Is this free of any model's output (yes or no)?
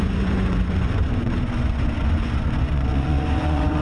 no